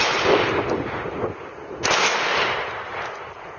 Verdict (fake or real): real